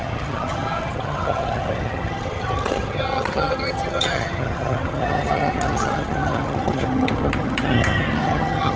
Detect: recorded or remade remade